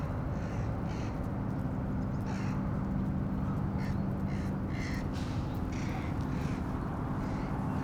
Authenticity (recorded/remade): recorded